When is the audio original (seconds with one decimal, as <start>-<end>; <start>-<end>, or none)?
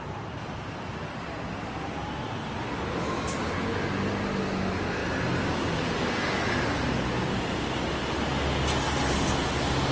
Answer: 0.0-9.9